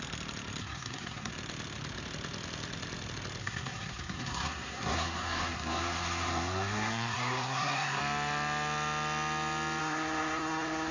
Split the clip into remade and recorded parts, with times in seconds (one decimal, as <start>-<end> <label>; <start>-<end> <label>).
0.0-0.6 recorded; 0.6-1.3 remade; 1.3-3.4 recorded; 3.4-8.0 remade; 8.0-9.8 recorded; 9.8-10.9 remade